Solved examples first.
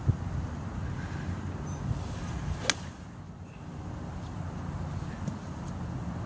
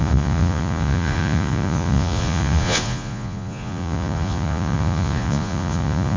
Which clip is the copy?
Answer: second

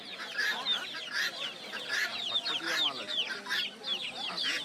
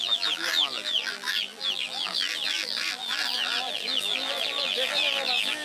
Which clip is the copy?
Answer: second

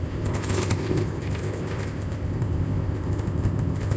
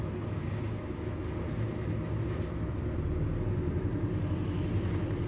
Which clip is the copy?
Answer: first